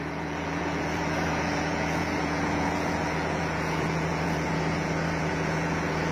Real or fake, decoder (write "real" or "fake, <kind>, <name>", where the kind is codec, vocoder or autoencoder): fake, vocoder, Vocos